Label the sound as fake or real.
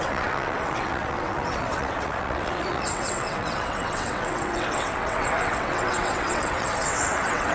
fake